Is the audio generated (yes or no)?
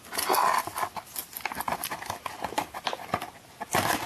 no